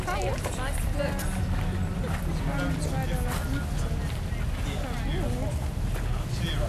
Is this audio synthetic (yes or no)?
no